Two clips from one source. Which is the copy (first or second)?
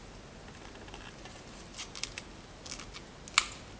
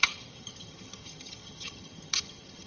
second